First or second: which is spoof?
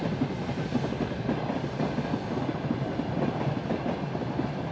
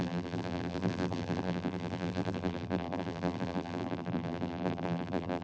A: second